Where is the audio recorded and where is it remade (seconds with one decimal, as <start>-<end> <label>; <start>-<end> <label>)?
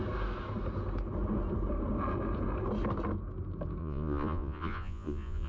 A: 0.0-3.8 recorded; 3.8-5.5 remade